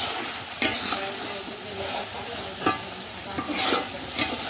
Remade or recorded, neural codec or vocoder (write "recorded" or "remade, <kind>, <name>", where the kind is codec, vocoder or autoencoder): recorded